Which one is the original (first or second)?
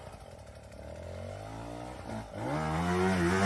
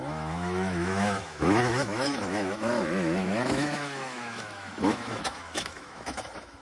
first